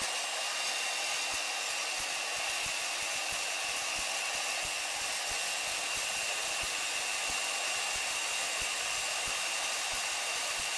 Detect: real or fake real